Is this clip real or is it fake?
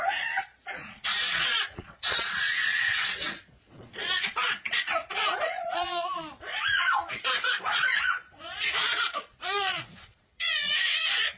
fake